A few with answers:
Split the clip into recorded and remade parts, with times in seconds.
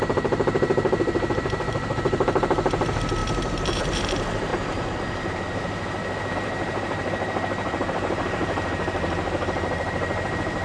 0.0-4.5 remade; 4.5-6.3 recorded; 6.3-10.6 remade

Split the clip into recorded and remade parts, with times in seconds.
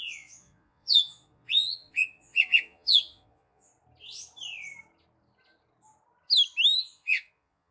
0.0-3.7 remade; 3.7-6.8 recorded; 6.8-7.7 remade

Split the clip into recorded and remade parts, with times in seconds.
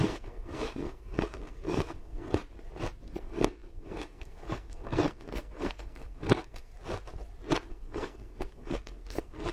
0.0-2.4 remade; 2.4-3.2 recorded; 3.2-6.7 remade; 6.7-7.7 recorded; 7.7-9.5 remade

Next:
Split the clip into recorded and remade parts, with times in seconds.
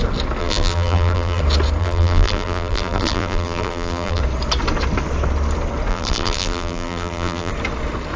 0.0-0.4 recorded; 0.4-1.4 remade; 1.4-1.8 recorded; 1.8-4.2 remade; 4.2-5.9 recorded; 5.9-7.5 remade; 7.5-8.2 recorded